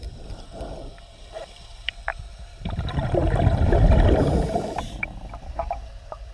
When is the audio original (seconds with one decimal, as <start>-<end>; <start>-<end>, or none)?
none